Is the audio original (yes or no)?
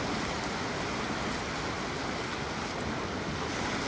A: yes